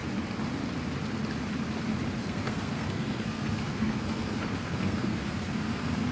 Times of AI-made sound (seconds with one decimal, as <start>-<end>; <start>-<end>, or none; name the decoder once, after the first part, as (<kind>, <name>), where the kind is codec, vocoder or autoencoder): 2.2-6.1 (codec, SNAC)